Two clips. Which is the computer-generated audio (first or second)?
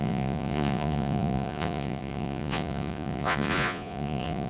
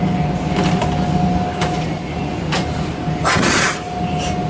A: first